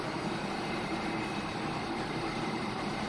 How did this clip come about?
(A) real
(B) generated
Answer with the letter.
B